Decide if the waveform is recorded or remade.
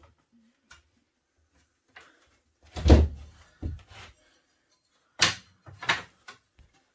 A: recorded